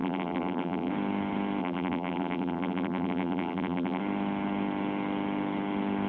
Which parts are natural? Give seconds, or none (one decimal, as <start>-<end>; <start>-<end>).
0.9-1.6; 4.0-6.1